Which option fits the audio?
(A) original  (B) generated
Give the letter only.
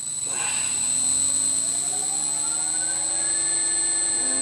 A